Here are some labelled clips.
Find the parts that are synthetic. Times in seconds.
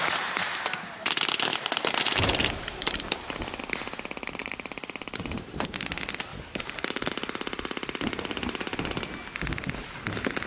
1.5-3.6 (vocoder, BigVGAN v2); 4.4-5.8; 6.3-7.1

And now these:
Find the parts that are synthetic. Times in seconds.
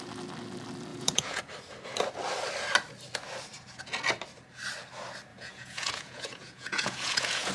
0.9-1.4 (vocoder, Vocos); 5.3-7.5